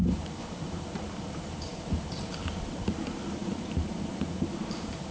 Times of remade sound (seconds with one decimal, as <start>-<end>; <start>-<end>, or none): 0.0-5.1